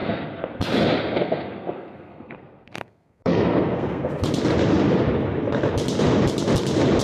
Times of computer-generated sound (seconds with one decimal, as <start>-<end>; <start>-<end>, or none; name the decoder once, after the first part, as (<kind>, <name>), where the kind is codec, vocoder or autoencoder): 0.0-0.6 (codec, SNAC); 1.2-4.1